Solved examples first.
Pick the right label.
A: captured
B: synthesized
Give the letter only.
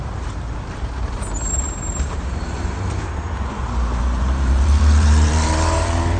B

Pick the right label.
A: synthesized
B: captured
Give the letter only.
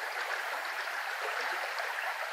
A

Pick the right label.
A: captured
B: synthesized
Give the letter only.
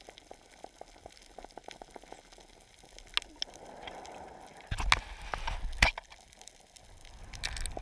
A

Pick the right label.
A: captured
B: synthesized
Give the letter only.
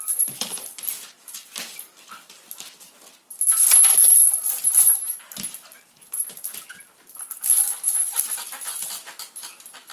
A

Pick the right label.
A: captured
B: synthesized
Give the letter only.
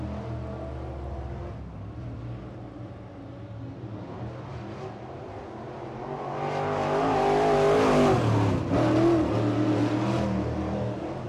A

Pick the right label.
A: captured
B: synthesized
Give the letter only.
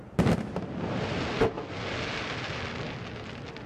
A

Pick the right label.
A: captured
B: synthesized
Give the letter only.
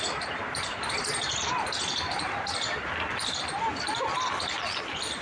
A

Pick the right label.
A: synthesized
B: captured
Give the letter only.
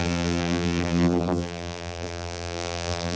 A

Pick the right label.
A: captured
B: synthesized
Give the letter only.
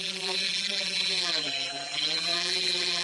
B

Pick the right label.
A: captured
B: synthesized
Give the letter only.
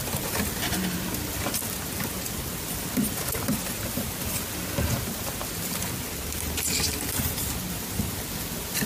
A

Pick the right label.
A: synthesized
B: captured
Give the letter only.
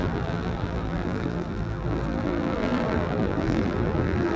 A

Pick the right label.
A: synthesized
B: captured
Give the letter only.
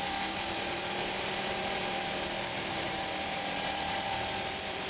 A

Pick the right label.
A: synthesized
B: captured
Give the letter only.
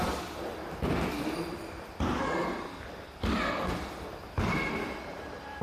A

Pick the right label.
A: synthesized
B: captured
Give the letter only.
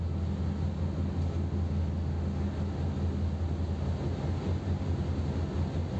B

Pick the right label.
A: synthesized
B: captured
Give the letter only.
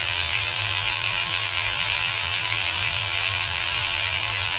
A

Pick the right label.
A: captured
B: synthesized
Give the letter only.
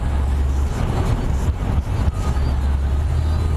A